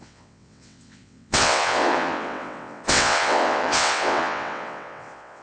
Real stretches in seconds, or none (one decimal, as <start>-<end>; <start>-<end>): none